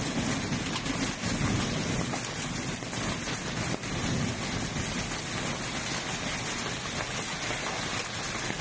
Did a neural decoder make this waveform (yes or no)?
no